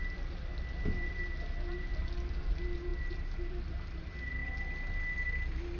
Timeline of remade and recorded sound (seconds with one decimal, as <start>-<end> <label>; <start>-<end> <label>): 0.0-5.8 recorded